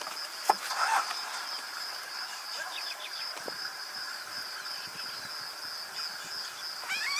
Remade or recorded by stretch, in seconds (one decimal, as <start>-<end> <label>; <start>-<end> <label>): 0.0-0.9 recorded; 0.9-5.2 remade; 5.2-7.2 recorded